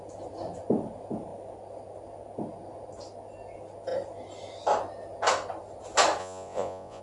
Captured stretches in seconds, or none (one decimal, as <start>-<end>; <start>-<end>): 0.0-6.2